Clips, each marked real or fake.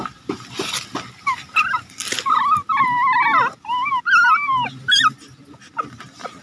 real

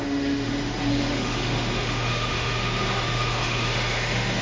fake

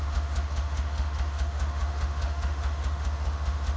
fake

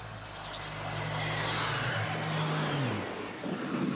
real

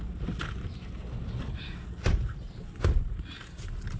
real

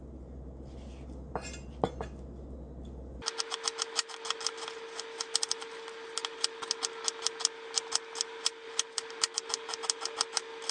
real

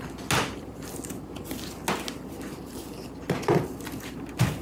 real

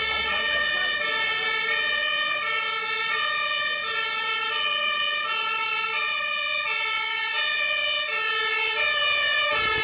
real